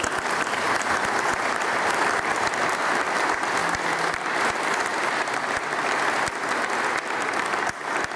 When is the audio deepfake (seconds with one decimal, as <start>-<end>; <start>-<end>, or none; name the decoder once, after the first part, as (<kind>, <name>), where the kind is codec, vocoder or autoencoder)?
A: none